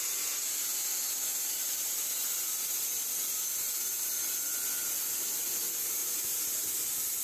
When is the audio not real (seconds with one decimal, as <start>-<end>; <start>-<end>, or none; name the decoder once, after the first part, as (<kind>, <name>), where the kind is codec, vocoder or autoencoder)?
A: 6.0-6.7 (vocoder, BigVGAN v2)